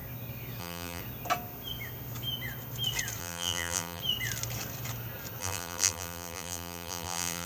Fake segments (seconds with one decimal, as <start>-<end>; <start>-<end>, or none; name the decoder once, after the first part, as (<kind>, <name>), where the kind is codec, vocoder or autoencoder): 0.6-1.0 (vocoder, BigVGAN v2); 3.2-4.0; 5.4-7.5